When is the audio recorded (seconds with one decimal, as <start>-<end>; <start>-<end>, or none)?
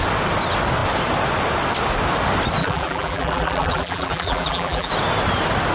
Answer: 0.0-2.6; 4.9-5.7